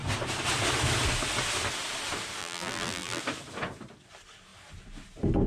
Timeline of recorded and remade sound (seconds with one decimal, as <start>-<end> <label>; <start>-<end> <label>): 0.0-2.4 recorded; 2.4-3.2 remade; 3.2-5.5 recorded